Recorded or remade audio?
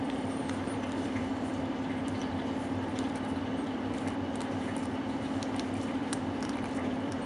remade